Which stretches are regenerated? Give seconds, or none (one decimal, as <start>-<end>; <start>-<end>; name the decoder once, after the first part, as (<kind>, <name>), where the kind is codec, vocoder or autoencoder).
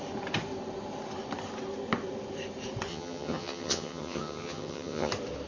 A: 2.9-5.1 (vocoder, HiFi-GAN)